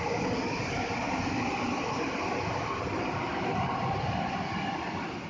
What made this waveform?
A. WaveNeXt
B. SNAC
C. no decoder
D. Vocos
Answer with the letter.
C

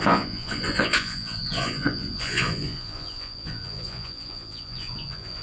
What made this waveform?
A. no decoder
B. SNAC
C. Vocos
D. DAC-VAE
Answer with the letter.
C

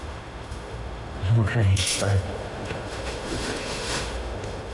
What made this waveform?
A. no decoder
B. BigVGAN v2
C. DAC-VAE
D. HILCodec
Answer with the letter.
C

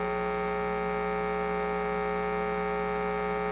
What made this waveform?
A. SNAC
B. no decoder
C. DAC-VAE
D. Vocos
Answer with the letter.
B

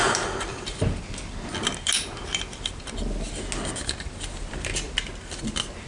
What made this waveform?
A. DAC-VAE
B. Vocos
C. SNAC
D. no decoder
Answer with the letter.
D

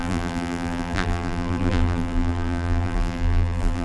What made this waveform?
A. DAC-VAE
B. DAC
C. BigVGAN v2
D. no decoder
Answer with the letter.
C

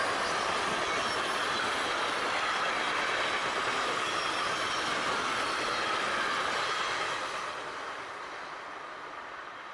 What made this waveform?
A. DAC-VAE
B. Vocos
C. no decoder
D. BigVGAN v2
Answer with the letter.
C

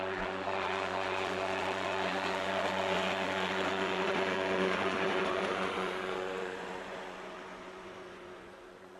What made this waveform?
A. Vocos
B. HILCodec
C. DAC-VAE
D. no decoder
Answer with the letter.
A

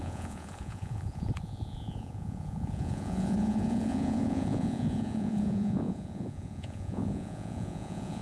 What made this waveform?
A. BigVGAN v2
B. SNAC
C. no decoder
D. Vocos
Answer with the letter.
D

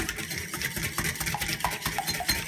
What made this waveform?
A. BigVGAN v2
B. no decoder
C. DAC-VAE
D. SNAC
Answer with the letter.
B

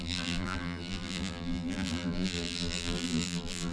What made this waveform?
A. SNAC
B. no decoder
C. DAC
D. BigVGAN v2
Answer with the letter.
D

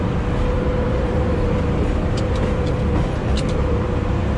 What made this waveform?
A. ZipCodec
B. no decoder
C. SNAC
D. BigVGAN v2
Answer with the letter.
D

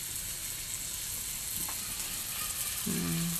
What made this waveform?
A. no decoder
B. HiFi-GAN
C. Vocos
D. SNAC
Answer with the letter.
A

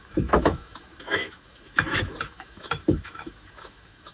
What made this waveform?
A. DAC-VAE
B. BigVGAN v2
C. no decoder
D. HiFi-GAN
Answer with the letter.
A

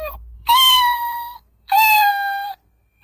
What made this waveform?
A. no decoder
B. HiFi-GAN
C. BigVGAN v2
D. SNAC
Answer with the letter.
D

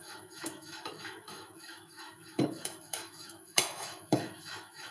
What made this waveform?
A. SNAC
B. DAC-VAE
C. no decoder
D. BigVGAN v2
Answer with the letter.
B